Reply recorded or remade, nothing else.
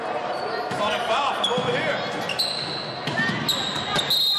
recorded